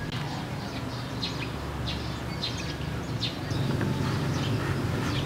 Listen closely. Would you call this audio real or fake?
real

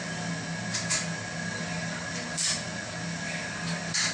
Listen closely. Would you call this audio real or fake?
real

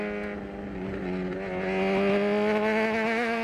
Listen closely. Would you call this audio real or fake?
real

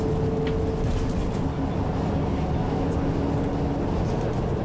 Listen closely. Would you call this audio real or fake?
real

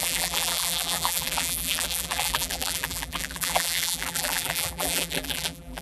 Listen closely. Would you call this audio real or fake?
fake